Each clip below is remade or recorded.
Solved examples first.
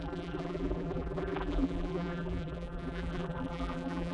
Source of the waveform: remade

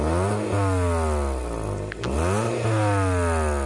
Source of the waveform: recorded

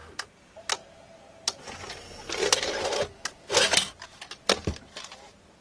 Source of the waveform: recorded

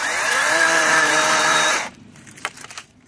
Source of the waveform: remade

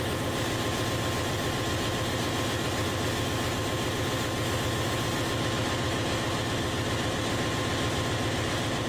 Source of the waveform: recorded